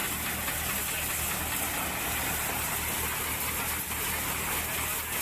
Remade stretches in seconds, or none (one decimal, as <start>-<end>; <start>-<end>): none